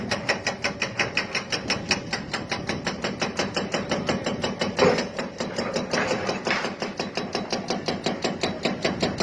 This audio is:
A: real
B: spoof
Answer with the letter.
A